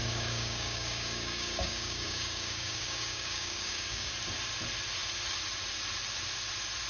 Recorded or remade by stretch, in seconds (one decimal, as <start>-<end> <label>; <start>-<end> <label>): 0.0-4.1 remade; 4.1-6.9 recorded